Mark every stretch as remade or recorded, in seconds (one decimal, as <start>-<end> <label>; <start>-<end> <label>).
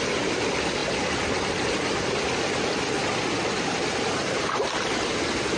0.0-5.6 recorded